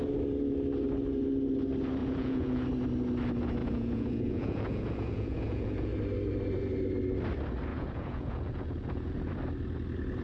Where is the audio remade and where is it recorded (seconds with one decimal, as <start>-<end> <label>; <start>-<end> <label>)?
0.0-2.0 recorded; 2.0-2.6 remade; 2.6-3.6 recorded; 3.6-5.9 remade; 5.9-7.7 recorded; 7.7-9.3 remade; 9.3-10.2 recorded